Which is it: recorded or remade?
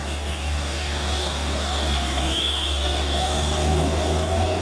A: remade